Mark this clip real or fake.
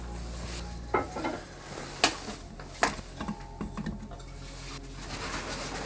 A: real